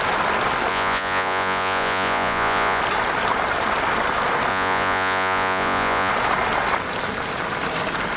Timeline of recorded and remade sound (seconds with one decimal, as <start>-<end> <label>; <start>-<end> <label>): 0.0-0.7 recorded; 0.7-2.8 remade; 2.8-4.5 recorded; 4.5-6.1 remade; 6.1-8.2 recorded